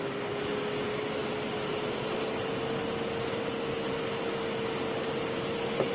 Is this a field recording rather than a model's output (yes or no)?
yes